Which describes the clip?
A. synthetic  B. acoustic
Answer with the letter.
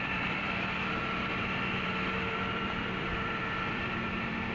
A